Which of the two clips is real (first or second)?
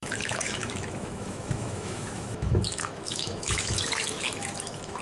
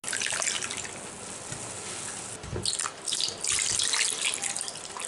second